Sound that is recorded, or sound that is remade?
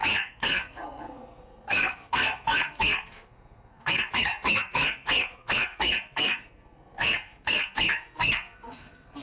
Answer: remade